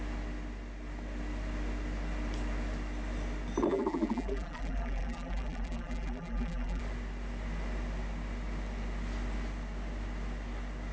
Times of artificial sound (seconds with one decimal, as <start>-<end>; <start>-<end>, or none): 3.7-6.8